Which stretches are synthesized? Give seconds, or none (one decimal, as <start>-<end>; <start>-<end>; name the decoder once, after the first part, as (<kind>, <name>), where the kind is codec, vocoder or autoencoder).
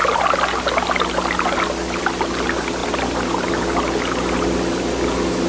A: none